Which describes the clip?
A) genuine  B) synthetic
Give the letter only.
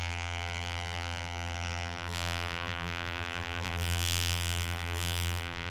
B